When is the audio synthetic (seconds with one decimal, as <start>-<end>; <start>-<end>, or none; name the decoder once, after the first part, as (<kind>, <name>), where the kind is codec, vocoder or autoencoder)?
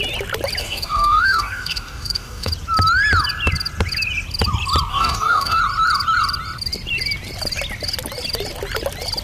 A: 0.6-2.5 (codec, DAC); 4.9-5.6